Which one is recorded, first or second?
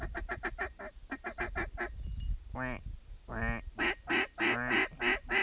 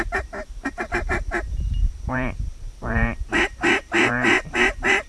first